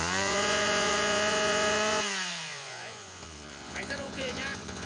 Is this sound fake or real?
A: fake